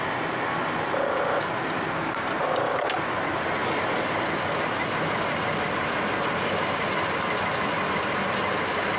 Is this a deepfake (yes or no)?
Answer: no